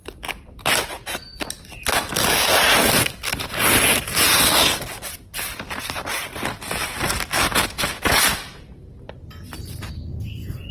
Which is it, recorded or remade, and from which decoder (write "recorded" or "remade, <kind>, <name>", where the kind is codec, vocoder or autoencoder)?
recorded